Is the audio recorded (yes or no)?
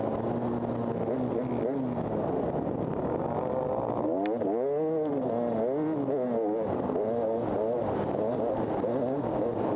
yes